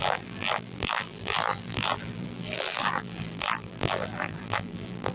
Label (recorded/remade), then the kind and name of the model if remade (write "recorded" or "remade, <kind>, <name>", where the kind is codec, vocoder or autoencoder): remade, vocoder, BigVGAN v2